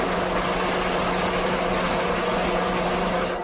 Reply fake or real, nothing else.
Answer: real